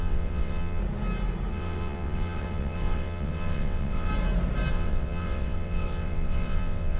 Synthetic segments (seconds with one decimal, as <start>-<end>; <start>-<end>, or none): 0.0-0.8; 1.5-4.1; 4.7-7.0